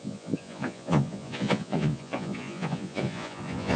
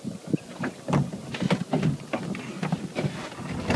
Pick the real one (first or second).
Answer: second